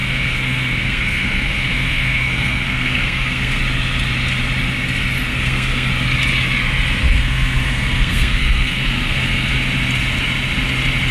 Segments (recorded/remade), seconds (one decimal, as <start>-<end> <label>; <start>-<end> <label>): 0.0-3.6 remade; 3.6-5.3 recorded; 5.3-5.9 remade; 5.9-7.0 recorded; 7.0-9.5 remade; 9.5-11.1 recorded